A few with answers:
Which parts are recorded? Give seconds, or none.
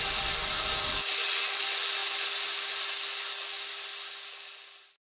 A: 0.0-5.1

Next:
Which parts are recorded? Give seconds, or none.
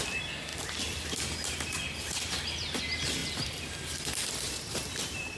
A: 0.0-5.4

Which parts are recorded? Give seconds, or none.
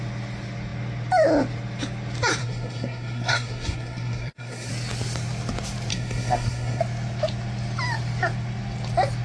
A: 0.0-2.4; 4.7-5.9; 6.8-9.2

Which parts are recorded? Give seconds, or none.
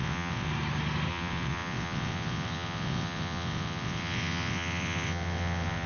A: 0.5-1.1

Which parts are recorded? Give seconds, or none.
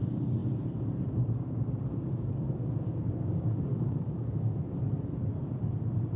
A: 0.4-1.2; 4.5-6.2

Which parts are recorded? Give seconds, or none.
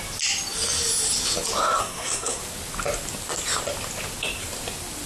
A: 0.0-1.8; 2.4-5.1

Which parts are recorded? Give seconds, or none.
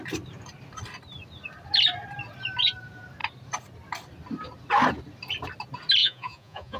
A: 0.0-6.0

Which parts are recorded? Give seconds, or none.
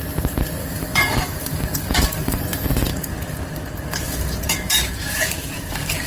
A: 0.0-0.6; 2.4-2.9